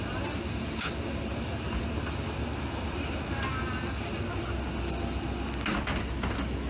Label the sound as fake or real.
real